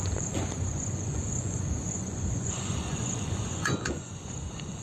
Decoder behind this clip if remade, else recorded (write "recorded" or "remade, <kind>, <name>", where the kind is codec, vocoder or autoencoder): remade, vocoder, Vocos